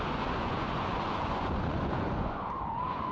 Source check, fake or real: fake